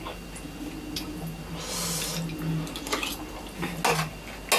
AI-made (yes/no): no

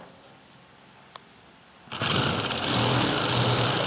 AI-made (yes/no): no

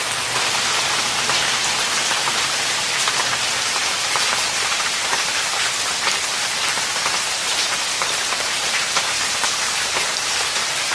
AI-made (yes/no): yes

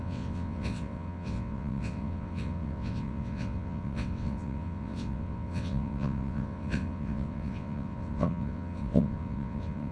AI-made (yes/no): yes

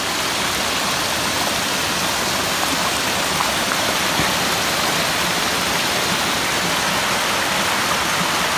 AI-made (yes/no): no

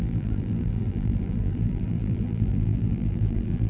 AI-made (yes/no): yes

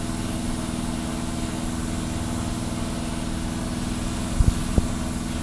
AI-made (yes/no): no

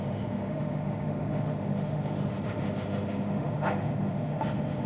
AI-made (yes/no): yes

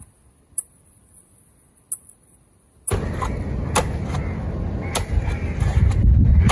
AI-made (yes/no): no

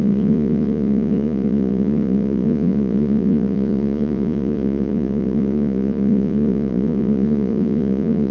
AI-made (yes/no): yes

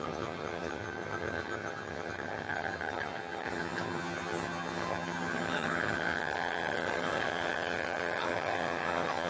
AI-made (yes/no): yes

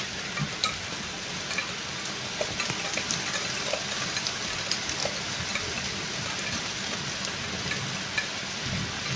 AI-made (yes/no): no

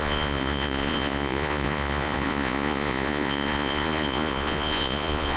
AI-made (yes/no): yes